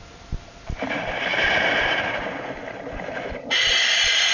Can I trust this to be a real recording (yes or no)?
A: yes